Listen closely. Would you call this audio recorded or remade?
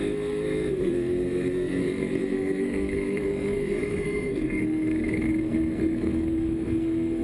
remade